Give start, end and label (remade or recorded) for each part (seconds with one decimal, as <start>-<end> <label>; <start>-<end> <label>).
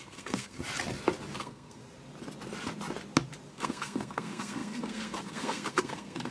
0.0-0.6 remade; 0.6-1.4 recorded; 1.4-1.8 remade; 1.8-3.5 recorded; 3.5-6.3 remade